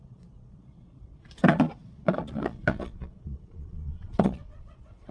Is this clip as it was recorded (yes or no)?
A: no